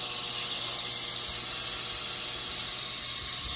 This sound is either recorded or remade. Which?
recorded